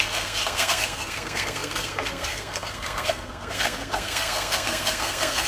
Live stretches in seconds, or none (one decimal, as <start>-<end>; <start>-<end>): none